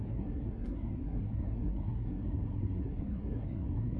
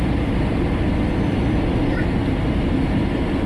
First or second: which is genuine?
second